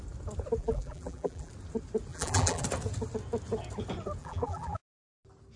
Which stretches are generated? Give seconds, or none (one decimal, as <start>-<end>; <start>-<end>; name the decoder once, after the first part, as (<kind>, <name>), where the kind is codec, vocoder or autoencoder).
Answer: 0.6-1.5 (vocoder, BigVGAN v2); 2.1-2.6; 4.2-4.8

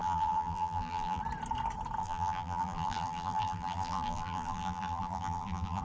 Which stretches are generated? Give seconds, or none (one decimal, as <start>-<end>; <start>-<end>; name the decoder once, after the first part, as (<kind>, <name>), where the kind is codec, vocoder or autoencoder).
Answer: 0.0-1.2 (vocoder, BigVGAN v2); 2.0-5.8